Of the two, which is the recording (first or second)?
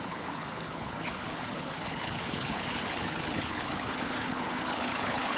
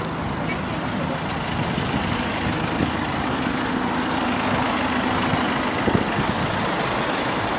second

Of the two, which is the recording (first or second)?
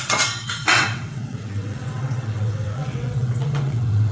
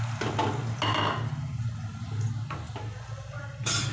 second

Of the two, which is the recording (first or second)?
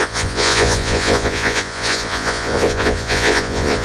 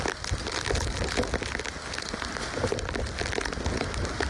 second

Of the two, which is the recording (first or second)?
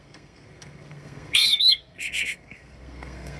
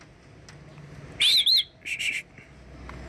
second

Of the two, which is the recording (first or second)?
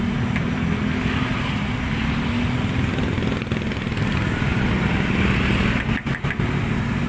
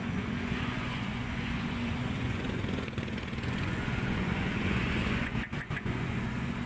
first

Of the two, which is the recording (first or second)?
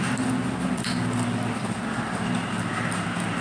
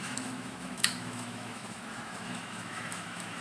first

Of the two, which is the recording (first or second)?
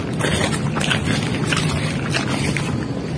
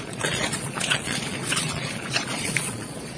first